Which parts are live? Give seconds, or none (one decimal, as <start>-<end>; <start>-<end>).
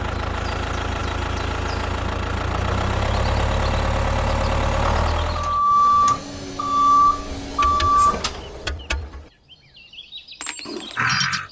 0.0-11.5